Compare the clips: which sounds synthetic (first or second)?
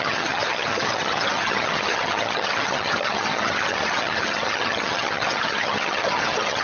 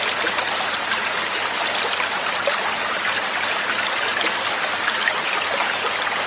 first